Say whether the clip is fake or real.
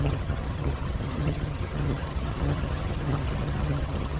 fake